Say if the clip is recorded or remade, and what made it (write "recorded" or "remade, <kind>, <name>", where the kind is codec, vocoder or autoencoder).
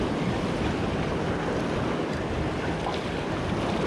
recorded